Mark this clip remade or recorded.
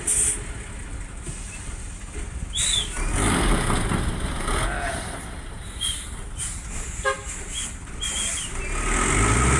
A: recorded